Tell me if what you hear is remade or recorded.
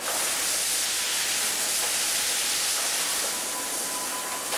recorded